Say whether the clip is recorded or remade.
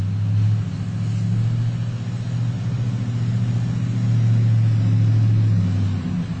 recorded